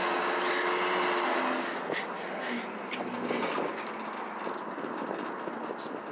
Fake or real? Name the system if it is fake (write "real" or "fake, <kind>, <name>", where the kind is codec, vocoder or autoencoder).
real